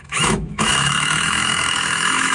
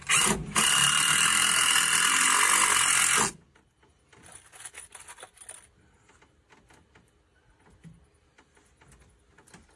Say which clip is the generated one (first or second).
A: first